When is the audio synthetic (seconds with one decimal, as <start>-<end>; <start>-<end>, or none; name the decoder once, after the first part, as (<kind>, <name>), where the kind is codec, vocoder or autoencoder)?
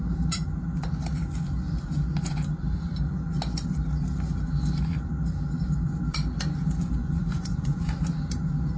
7.0-7.9 (vocoder, Vocos)